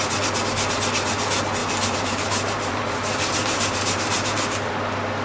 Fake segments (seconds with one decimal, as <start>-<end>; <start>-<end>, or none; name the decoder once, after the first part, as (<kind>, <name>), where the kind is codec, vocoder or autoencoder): 1.6-4.7 (vocoder, BigVGAN v2)